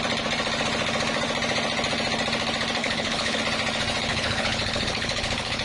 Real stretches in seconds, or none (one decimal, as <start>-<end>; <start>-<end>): 0.0-2.8; 3.4-4.1